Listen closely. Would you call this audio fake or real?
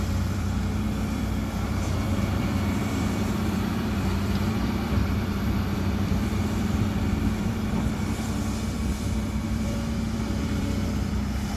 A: fake